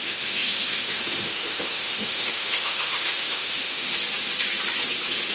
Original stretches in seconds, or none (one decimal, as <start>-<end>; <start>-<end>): 3.9-5.3